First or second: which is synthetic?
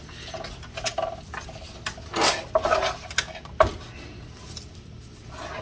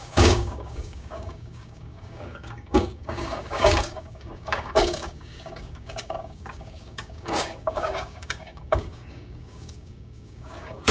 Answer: second